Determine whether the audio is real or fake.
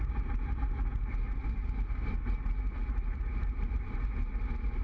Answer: fake